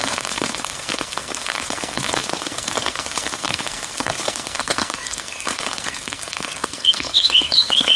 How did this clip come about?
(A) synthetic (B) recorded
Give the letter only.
A